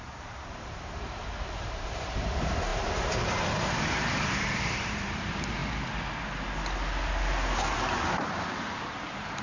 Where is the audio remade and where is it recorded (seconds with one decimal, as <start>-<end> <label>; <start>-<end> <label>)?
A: 0.0-5.6 remade; 5.6-8.7 recorded; 8.7-9.4 remade